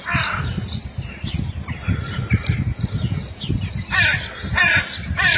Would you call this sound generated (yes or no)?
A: no